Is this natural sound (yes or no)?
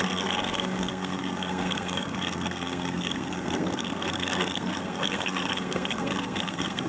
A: no